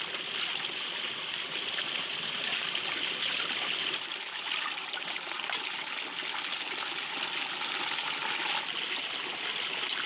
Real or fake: real